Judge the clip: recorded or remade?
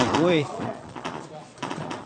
remade